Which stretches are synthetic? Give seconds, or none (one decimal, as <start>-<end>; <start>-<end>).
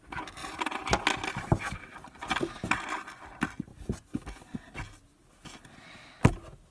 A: 0.4-1.0